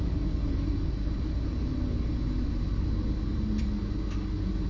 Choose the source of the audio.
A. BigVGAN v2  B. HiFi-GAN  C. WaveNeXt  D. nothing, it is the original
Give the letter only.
D